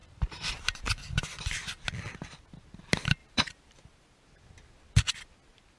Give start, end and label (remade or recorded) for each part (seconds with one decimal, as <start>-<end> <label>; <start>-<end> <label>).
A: 0.0-0.5 remade; 0.5-3.2 recorded; 3.2-3.8 remade; 3.8-5.8 recorded